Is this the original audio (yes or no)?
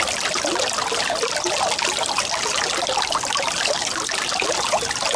yes